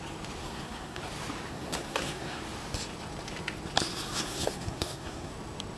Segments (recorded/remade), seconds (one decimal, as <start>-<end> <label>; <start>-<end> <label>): 0.0-0.4 recorded; 0.4-1.0 remade; 1.0-1.5 recorded; 1.5-2.4 remade; 2.4-4.1 recorded; 4.1-5.3 remade; 5.3-5.8 recorded